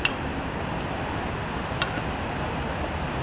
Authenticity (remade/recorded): recorded